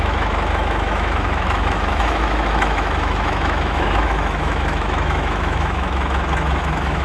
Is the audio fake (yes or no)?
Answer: yes